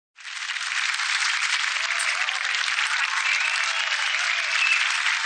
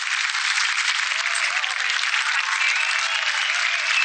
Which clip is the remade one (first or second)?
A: first